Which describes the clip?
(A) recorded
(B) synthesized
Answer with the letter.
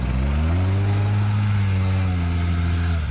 A